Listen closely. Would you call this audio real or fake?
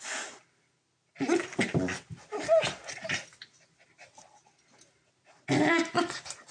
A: real